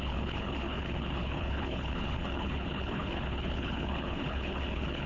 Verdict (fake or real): fake